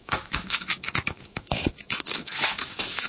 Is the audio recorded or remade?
remade